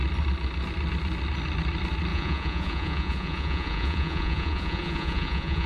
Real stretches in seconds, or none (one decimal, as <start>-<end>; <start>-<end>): 0.0-2.1